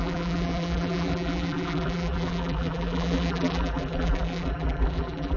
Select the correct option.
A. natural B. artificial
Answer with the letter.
B